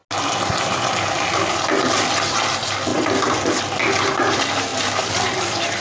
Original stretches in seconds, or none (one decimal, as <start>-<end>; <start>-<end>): 0.0-4.7